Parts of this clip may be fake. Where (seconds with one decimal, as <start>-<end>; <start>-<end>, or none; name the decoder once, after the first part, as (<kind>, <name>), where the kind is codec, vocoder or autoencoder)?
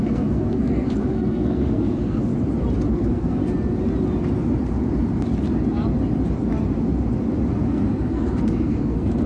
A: 0.0-2.3 (codec, SNAC); 2.9-3.4; 7.5-9.3